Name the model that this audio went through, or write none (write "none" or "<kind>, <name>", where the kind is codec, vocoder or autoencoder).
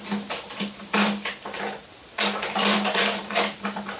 none